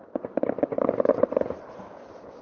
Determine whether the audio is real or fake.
real